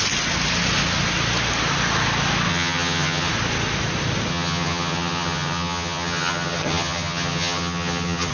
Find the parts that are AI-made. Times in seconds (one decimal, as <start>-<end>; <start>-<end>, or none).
2.5-3.3; 4.3-8.3